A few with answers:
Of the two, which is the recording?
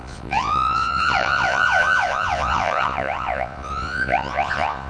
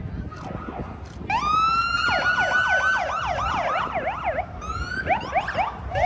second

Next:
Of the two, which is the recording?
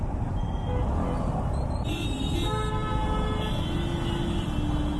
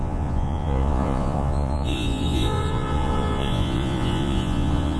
first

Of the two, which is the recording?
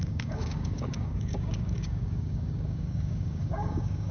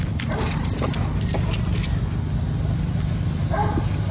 second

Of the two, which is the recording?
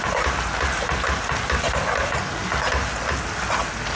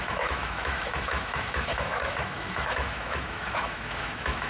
first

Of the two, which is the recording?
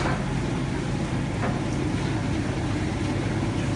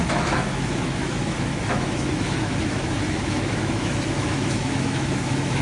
first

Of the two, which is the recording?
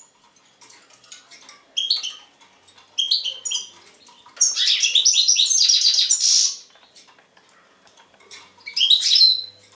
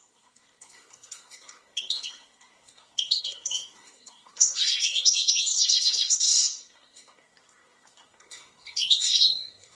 first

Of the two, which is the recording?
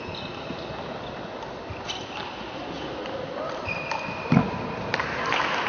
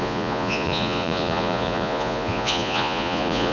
first